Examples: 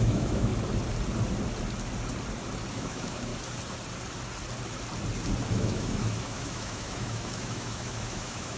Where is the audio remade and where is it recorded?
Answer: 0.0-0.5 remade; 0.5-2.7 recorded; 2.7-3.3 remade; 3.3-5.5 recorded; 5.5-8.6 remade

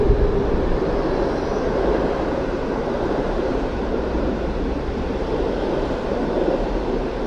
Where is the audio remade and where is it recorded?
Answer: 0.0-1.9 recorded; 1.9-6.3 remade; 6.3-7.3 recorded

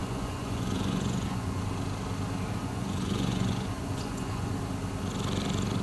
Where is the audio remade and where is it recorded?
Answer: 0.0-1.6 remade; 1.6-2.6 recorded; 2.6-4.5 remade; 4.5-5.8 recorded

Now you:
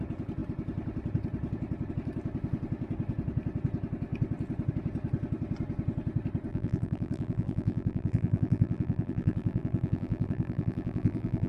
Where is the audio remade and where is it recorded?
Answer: 0.0-6.5 recorded; 6.5-11.5 remade

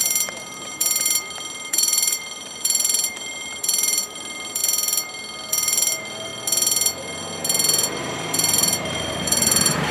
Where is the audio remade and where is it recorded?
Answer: 0.0-4.6 remade; 4.6-5.5 recorded; 5.5-6.3 remade; 6.3-8.0 recorded; 8.0-9.9 remade

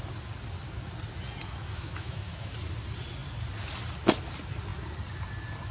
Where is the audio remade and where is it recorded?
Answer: 0.0-1.6 recorded; 1.6-2.5 remade; 2.5-5.7 recorded

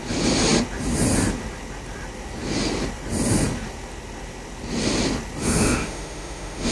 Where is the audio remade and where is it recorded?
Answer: 0.0-5.4 recorded; 5.4-6.7 remade

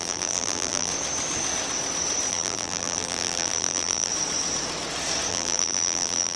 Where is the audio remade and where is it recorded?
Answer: 0.0-0.9 remade; 0.9-2.3 recorded; 2.3-4.1 remade; 4.1-5.3 recorded; 5.3-6.4 remade